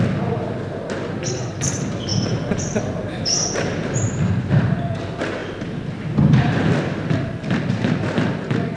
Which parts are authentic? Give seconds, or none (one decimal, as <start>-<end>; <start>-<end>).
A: 0.0-2.1; 4.3-5.4; 7.6-8.8